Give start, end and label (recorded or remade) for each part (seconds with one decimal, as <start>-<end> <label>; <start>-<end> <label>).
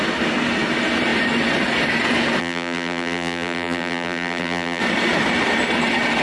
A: 0.0-2.4 recorded; 2.4-4.8 remade; 4.8-6.2 recorded